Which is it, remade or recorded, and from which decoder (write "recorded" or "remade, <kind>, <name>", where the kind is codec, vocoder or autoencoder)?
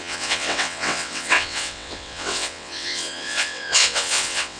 remade, vocoder, WaveNeXt